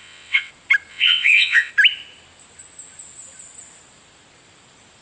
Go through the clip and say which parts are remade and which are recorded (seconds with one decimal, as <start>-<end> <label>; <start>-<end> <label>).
0.0-0.5 remade; 0.5-0.9 recorded; 0.9-1.7 remade; 1.7-5.0 recorded